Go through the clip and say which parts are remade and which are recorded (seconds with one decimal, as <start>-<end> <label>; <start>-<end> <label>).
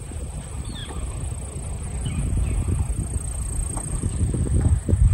0.0-0.8 remade; 0.8-3.9 recorded; 3.9-5.1 remade